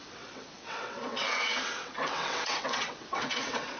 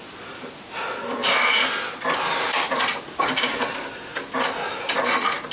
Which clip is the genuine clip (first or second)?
second